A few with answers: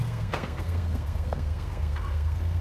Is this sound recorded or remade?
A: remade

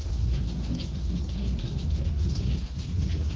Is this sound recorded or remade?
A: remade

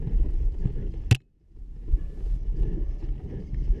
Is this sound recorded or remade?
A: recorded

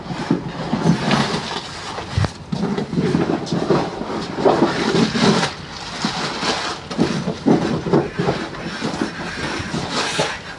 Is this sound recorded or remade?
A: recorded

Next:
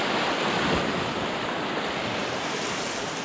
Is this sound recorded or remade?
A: recorded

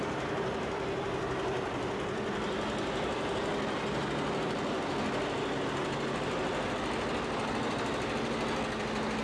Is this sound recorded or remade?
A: recorded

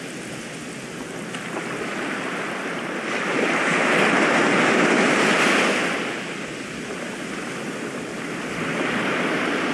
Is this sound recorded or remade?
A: recorded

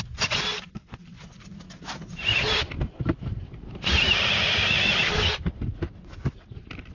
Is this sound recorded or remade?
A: recorded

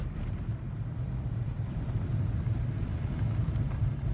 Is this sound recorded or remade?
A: recorded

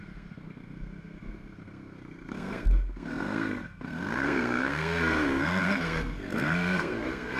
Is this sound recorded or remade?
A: remade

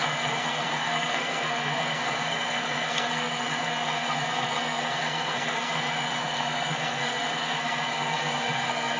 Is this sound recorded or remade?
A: remade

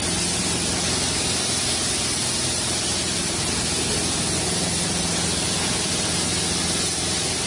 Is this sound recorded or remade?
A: recorded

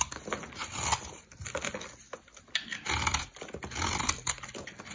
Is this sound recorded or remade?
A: recorded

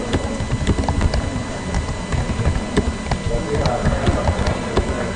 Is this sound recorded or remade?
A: recorded